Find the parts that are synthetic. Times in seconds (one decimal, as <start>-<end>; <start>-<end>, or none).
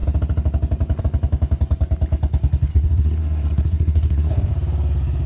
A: 2.7-4.5